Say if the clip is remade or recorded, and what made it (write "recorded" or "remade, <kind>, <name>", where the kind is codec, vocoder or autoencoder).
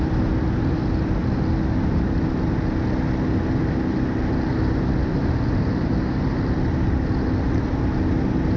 recorded